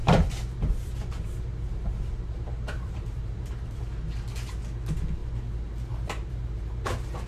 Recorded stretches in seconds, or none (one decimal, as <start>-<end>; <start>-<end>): 3.8-7.3